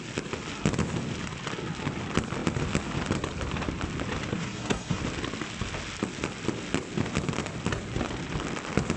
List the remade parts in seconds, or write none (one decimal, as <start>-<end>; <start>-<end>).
4.3-5.0